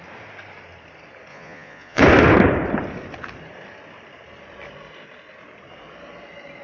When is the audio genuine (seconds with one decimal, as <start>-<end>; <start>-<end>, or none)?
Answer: 0.0-1.3; 2.0-6.6